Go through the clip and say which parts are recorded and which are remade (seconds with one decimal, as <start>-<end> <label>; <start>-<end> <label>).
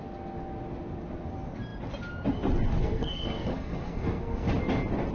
0.0-2.8 recorded; 2.8-4.5 remade; 4.5-5.1 recorded